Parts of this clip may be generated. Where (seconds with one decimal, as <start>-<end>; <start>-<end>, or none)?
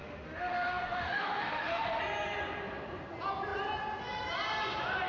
0.0-2.0